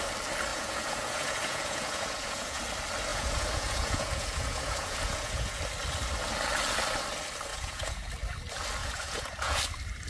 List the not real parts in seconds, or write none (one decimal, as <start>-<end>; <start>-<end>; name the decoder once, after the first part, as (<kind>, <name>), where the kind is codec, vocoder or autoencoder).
0.5-2.6 (vocoder, Vocos); 3.1-5.6; 7.5-8.1; 8.8-9.6